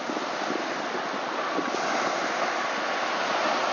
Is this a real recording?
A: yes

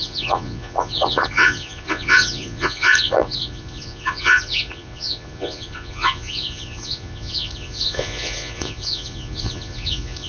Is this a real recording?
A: no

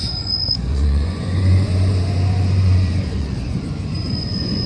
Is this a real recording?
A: no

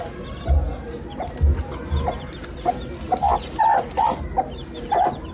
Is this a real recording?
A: yes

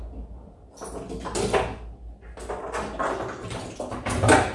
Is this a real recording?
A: yes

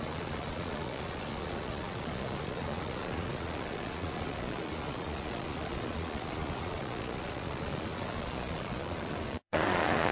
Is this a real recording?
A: no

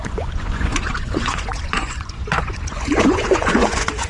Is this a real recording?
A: no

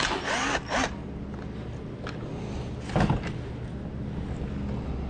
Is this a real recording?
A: yes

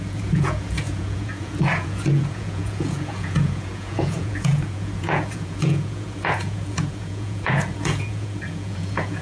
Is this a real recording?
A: no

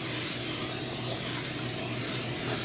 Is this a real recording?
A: yes